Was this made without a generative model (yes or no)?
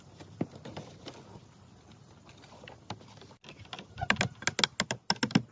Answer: yes